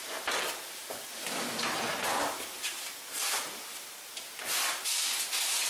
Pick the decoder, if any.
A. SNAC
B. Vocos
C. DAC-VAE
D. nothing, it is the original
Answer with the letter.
D